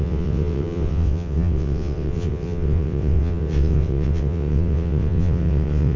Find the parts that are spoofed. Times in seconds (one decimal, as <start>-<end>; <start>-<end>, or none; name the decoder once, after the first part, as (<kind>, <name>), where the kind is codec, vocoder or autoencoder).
0.0-6.0 (vocoder, WaveNeXt)